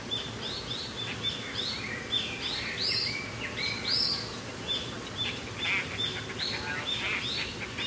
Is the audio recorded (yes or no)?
yes